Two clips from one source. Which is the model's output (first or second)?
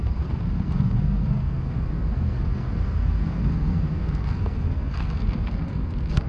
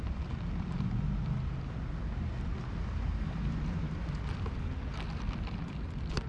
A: first